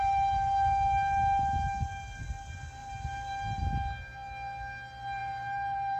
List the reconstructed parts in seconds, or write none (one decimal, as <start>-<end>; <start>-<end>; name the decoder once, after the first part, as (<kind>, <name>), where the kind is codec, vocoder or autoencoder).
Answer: 2.8-3.6 (vocoder, BigVGAN v2); 5.2-6.0